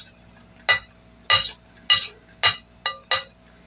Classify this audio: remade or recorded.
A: recorded